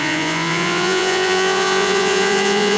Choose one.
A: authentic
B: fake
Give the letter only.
B